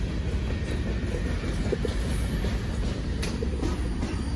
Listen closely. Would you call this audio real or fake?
real